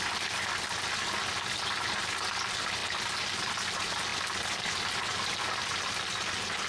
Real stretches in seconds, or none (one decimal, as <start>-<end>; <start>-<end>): 0.0-6.7